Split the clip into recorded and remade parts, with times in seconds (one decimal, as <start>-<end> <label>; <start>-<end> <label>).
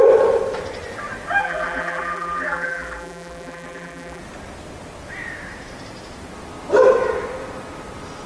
0.0-1.4 recorded; 1.4-4.2 remade; 4.2-8.3 recorded